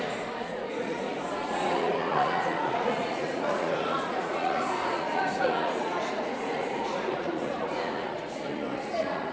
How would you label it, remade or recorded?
remade